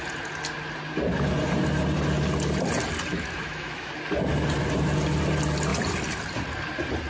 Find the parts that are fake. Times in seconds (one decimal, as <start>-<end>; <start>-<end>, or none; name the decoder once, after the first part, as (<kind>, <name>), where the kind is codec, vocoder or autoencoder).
3.1-3.9 (autoencoder, DAC-VAE)